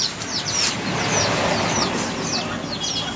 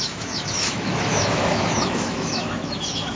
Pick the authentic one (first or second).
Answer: first